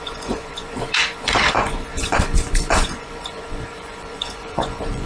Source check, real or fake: fake